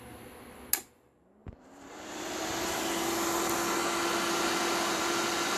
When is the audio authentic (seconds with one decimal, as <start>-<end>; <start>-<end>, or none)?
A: 0.0-1.4; 2.8-5.6